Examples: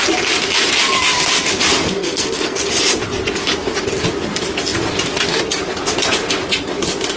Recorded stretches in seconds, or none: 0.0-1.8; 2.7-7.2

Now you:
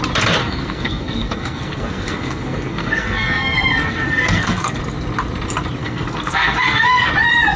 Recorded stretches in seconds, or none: 0.0-0.4; 4.8-5.8; 7.1-7.6